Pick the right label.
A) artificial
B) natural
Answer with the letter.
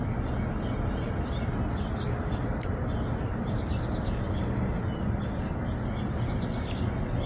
B